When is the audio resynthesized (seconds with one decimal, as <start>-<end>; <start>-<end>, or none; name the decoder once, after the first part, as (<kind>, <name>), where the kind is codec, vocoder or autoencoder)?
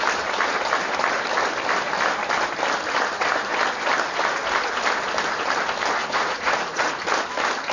6.0-6.9 (vocoder, Vocos)